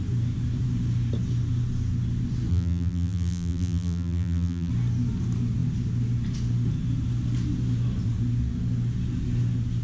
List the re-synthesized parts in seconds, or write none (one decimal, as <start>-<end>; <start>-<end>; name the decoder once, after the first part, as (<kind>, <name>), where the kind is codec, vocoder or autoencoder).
2.5-4.7 (vocoder, BigVGAN v2)